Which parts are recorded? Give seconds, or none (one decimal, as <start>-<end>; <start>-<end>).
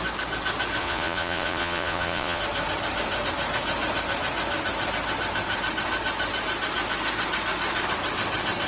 0.0-0.8; 2.4-8.7